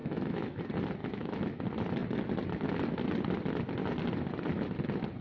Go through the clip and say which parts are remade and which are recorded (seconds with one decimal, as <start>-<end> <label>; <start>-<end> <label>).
0.0-0.6 remade; 0.6-1.0 recorded; 1.0-1.6 remade; 1.6-5.2 recorded